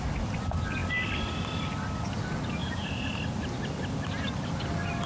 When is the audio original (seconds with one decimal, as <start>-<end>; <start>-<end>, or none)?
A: 0.0-2.6; 3.1-5.1